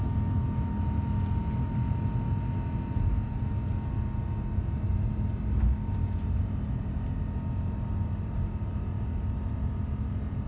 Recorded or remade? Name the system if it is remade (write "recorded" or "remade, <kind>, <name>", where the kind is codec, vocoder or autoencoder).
recorded